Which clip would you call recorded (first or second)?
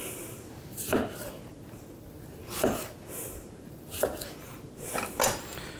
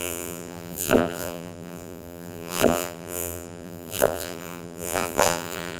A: first